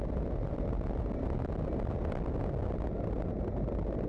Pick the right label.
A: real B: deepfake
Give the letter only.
A